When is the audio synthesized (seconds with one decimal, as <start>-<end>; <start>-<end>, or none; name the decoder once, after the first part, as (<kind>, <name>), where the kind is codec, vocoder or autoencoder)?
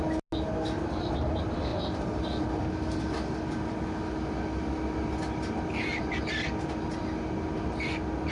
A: none